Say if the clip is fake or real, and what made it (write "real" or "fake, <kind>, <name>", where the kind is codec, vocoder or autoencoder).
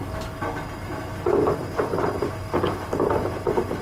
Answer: fake, vocoder, BigVGAN v2